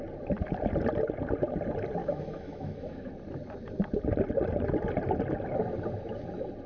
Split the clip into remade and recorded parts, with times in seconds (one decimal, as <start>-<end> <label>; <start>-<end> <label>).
0.0-2.0 recorded; 2.0-3.1 remade; 3.1-6.7 recorded